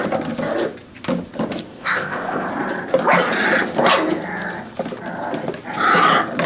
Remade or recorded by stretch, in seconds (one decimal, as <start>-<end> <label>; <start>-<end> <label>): 0.0-1.7 recorded; 1.7-2.5 remade; 2.5-6.5 recorded